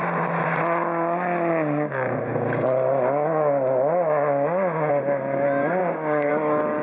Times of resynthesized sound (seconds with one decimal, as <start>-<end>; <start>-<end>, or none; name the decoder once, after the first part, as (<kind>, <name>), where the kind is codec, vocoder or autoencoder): 5.8-6.3 (codec, DAC)